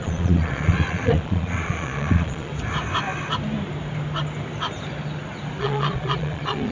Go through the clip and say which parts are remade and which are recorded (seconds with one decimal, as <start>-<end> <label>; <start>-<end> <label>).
0.0-2.5 remade; 2.5-5.6 recorded; 5.6-6.7 remade